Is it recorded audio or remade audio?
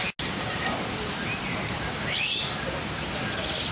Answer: recorded